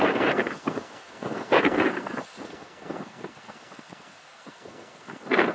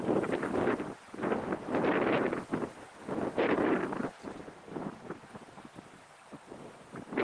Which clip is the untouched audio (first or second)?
second